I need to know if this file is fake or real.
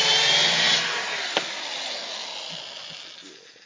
fake